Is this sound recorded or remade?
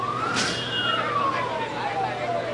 recorded